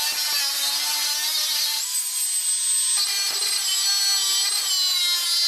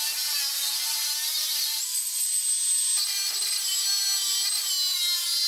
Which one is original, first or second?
first